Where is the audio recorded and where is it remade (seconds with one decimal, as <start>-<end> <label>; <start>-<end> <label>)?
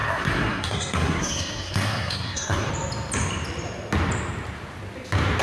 0.0-2.7 remade; 2.7-5.4 recorded